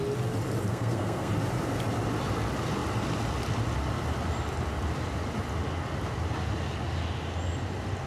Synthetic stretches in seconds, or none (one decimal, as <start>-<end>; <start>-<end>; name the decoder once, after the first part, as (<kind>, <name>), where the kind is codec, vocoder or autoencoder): 0.7-1.3 (codec, SNAC)